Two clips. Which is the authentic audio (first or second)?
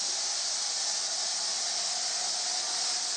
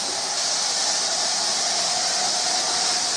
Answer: first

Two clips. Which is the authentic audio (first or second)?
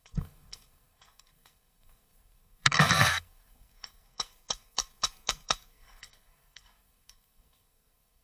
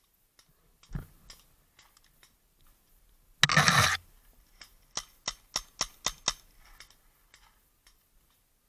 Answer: second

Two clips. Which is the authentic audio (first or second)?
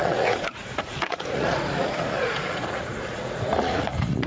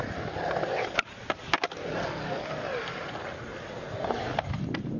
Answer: second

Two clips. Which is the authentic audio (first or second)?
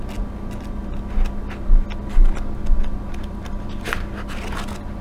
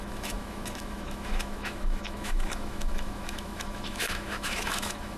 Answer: first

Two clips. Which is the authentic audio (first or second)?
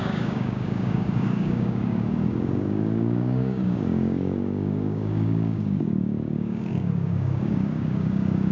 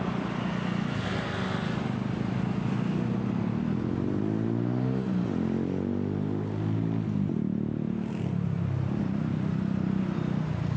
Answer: second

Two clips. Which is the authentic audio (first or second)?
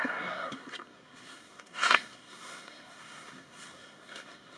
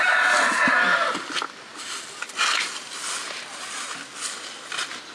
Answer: second